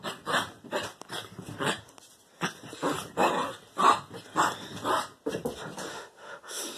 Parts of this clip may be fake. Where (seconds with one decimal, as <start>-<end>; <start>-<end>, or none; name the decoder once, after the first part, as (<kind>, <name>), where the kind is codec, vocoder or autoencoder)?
5.9-6.8 (autoencoder, DAC-VAE)

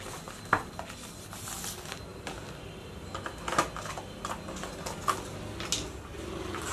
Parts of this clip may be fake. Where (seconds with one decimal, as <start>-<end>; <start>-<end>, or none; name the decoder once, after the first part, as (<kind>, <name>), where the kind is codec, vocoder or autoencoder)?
none

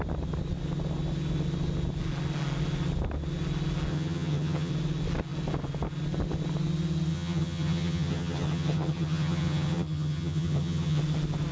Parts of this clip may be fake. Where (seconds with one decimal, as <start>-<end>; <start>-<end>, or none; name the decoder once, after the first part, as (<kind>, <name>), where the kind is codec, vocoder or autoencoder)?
3.9-4.7 (vocoder, HiFi-GAN); 7.1-11.0

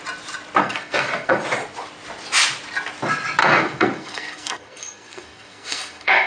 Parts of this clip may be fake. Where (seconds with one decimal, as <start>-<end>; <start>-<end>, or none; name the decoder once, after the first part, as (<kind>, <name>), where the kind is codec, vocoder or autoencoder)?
0.6-1.4 (codec, SNAC); 3.4-6.3

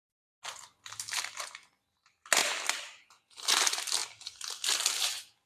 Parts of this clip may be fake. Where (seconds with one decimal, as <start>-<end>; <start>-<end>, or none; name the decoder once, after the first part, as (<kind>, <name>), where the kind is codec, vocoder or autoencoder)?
none

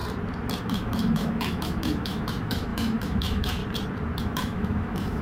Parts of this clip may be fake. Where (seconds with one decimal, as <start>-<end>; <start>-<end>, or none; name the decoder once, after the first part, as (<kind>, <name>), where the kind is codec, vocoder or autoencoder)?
0.6-3.6 (autoencoder, DAC-VAE); 4.2-5.2